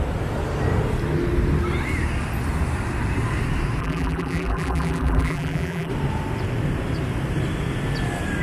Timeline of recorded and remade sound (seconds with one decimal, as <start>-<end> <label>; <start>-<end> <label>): 0.0-3.8 recorded; 3.8-5.9 remade; 5.9-8.4 recorded